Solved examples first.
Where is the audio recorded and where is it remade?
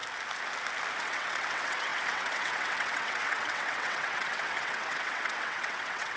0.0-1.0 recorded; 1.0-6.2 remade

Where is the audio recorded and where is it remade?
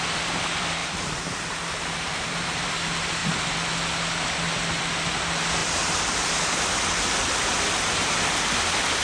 0.0-0.8 recorded; 0.8-2.7 remade; 2.7-9.0 recorded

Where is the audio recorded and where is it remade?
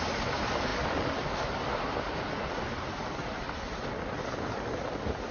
0.0-5.3 recorded